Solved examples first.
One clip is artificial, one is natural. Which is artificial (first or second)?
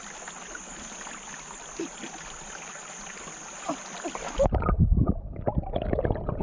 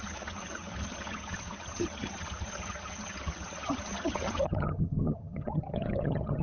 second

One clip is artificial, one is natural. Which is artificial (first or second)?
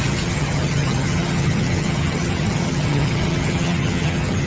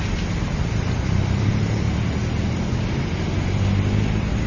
first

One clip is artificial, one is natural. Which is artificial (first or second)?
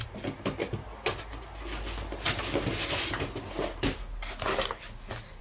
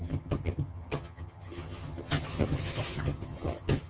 second